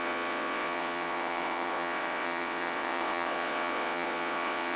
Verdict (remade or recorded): remade